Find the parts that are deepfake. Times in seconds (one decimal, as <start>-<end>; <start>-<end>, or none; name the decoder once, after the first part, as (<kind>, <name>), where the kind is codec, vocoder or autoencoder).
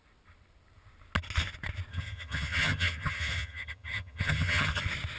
1.9-4.8 (vocoder, HiFi-GAN)